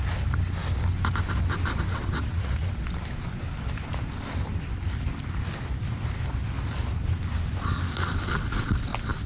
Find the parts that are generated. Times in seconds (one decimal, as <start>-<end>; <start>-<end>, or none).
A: 1.9-2.7